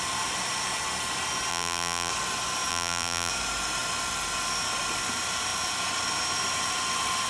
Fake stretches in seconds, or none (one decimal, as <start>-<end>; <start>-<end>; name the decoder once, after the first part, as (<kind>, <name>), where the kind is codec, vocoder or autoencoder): 1.5-2.1 (vocoder, BigVGAN v2); 2.7-3.3